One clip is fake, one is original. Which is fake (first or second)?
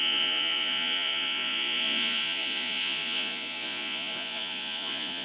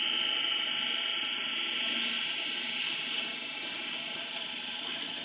first